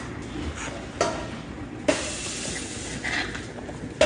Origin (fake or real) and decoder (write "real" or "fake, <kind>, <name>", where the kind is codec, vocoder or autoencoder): real